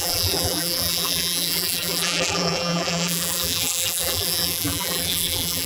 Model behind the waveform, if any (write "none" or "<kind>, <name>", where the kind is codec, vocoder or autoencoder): vocoder, BigVGAN v2